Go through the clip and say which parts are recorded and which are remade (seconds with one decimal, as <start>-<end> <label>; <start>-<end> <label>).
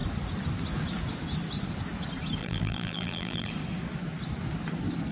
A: 0.0-2.4 recorded; 2.4-3.5 remade; 3.5-5.1 recorded